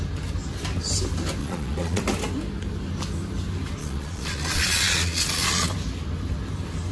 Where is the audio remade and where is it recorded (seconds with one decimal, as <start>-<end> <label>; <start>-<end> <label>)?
0.0-1.4 recorded; 1.4-2.0 remade; 2.0-3.8 recorded; 3.8-5.7 remade; 5.7-6.9 recorded